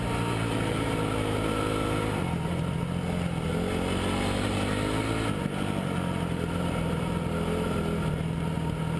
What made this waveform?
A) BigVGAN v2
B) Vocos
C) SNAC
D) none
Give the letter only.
D